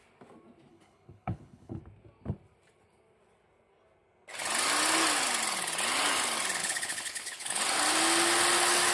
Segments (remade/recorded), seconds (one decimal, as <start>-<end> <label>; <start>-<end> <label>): 0.0-0.7 recorded; 0.7-1.8 remade; 1.8-6.6 recorded; 6.6-7.6 remade; 7.6-8.9 recorded